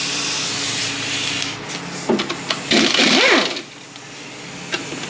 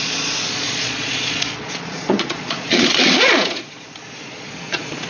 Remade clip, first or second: second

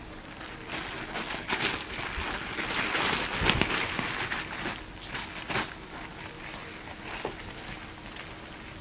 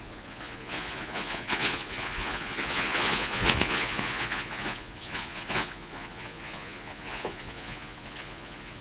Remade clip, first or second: second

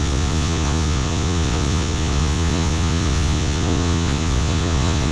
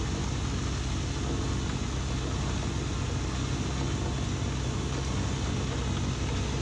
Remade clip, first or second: first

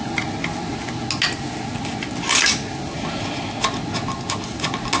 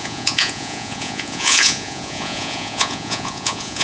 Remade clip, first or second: second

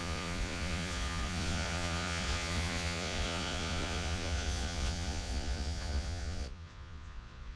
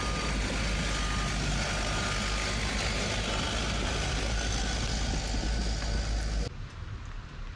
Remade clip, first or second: first